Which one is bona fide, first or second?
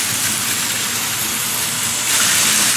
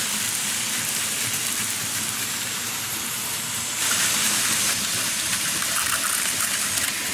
first